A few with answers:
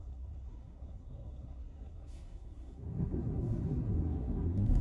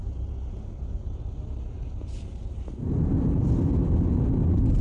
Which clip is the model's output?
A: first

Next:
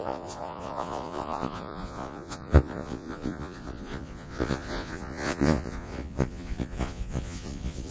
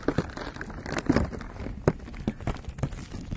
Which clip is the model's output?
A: first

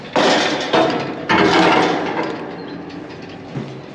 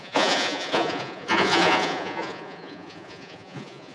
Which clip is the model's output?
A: second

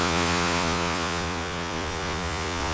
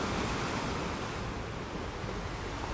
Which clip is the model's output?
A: first